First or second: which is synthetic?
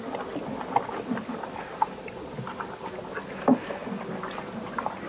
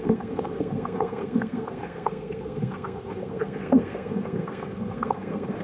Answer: second